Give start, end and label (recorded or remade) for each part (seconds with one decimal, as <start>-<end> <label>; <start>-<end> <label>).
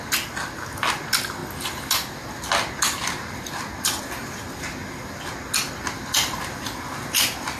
0.0-7.6 recorded